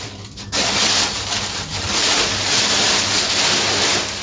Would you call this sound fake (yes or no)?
no